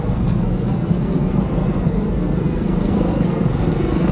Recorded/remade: remade